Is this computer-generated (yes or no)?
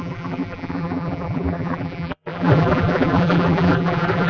yes